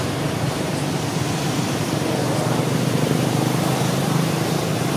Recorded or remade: remade